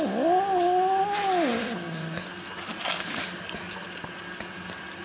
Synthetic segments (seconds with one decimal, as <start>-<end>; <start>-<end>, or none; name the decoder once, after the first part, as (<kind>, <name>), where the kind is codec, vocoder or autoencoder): none